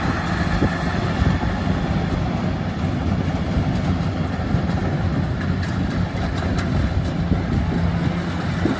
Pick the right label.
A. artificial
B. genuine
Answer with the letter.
B